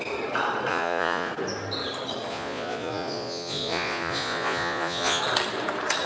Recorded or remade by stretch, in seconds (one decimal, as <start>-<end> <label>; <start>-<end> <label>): 0.0-0.7 recorded; 0.7-1.3 remade; 1.3-2.3 recorded; 2.3-5.2 remade; 5.2-6.1 recorded